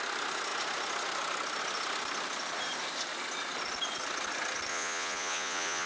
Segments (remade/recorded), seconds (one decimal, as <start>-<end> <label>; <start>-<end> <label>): 0.0-4.7 recorded; 4.7-5.9 remade